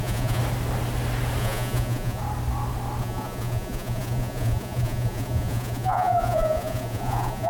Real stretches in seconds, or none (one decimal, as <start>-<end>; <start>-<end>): 0.4-1.4; 2.2-3.0